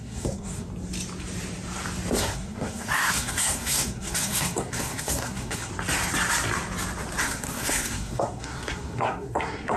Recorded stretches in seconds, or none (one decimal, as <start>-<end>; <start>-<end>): 0.7-2.2; 5.7-7.2